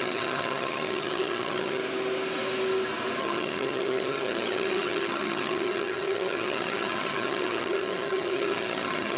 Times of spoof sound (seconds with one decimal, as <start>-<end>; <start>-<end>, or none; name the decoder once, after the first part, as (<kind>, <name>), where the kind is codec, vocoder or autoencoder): 0.0-1.8 (vocoder, HiFi-GAN); 3.2-9.2